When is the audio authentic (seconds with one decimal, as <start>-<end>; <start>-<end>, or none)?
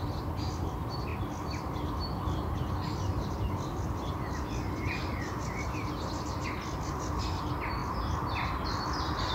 0.0-9.3